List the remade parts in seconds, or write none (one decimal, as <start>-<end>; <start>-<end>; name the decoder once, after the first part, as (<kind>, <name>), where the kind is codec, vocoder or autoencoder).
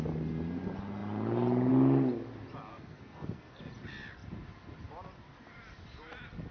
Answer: 2.7-3.6 (codec, SNAC)